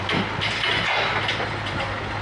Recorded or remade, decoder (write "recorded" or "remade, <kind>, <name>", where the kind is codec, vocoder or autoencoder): recorded